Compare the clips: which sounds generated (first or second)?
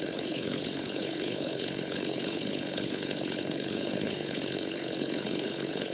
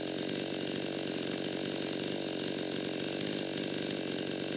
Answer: first